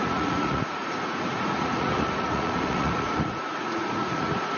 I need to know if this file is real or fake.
fake